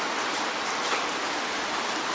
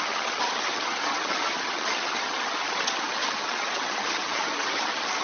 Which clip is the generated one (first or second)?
second